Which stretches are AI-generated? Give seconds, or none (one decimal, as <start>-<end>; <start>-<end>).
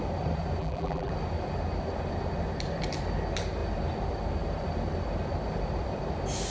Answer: 0.6-1.1